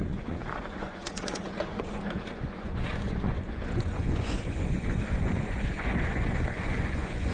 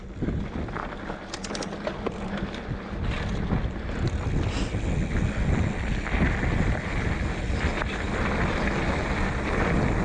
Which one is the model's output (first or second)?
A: first